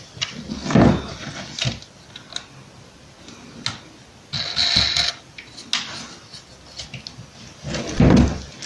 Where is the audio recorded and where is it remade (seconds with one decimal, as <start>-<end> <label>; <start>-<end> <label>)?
0.0-8.7 recorded